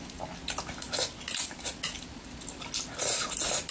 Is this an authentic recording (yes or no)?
yes